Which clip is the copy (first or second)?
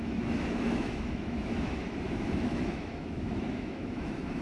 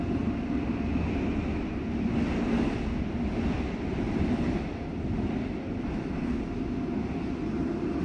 first